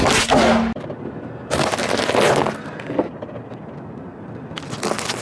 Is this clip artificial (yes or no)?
no